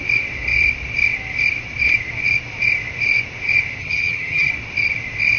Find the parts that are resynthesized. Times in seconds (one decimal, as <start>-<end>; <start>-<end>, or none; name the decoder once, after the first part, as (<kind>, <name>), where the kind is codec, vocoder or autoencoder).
3.8-4.5 (vocoder, HiFi-GAN)